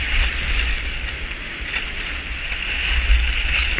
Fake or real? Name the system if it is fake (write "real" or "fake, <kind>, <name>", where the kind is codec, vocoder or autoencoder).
real